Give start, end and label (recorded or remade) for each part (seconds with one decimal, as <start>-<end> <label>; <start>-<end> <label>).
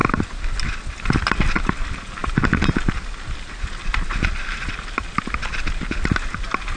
0.0-6.8 recorded